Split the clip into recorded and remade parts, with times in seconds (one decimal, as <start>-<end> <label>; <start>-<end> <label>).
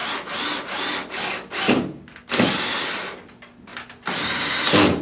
0.0-5.0 recorded